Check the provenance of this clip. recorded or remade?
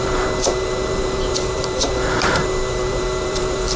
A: remade